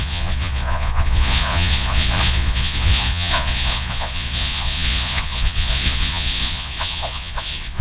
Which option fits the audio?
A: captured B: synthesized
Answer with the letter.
B